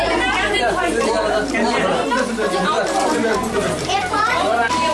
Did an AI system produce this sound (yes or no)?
yes